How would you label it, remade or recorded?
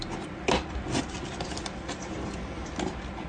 recorded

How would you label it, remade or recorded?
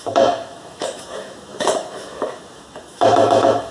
remade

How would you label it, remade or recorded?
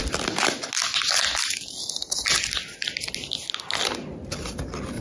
recorded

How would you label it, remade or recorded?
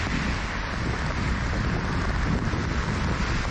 recorded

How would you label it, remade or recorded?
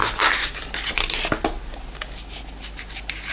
recorded